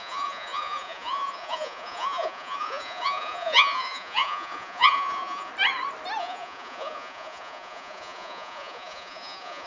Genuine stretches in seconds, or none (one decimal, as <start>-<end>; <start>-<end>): 5.5-6.2